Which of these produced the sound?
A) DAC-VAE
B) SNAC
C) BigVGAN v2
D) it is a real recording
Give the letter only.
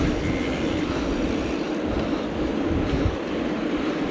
D